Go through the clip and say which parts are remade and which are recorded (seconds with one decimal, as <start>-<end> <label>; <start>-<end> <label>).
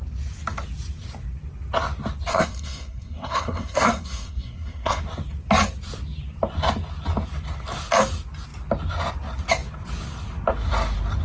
0.0-2.3 recorded; 2.3-5.0 remade; 5.0-11.2 recorded